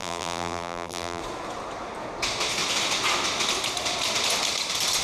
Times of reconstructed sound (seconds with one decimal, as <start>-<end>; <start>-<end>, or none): 0.0-1.2